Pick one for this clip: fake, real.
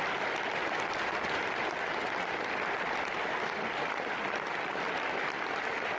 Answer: real